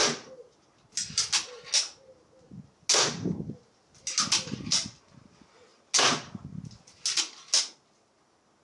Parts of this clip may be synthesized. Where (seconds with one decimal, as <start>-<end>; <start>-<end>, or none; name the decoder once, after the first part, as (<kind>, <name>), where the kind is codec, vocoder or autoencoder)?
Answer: none